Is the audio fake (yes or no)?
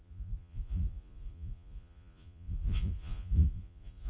yes